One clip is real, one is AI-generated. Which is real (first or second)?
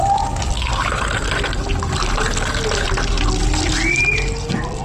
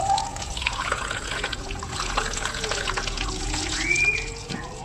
first